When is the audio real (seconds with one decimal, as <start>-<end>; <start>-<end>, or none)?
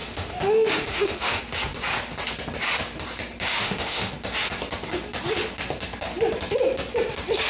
1.4-3.5; 4.1-7.5